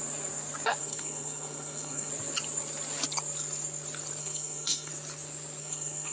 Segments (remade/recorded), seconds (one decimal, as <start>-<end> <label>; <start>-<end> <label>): 0.0-0.8 recorded; 0.8-2.1 remade; 2.1-4.2 recorded; 4.2-4.9 remade; 4.9-5.6 recorded; 5.6-6.1 remade